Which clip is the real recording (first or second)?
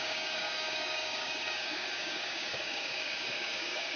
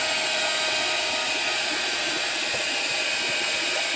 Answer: second